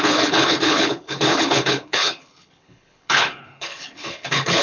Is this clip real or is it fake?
fake